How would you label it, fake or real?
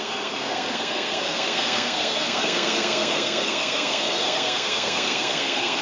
fake